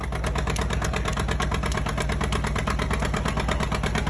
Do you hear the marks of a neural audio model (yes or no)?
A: no